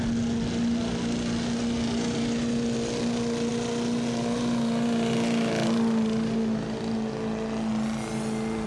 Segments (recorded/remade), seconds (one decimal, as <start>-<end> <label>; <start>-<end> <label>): 0.0-8.7 recorded

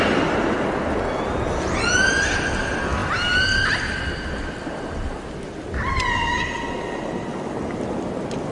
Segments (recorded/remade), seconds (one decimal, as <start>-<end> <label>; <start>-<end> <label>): 0.0-8.5 recorded